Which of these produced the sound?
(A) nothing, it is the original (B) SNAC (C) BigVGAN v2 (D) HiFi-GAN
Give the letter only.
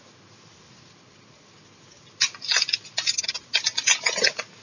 A